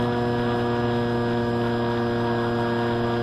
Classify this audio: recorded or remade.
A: recorded